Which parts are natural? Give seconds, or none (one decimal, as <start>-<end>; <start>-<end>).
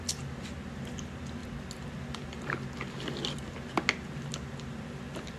0.0-5.4